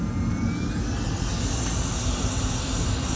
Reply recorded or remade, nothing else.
recorded